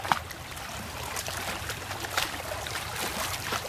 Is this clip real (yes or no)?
no